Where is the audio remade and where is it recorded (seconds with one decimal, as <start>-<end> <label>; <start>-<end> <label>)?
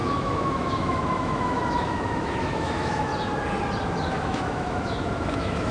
0.0-3.1 remade; 3.1-4.1 recorded; 4.1-5.7 remade